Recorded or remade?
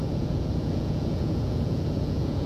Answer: remade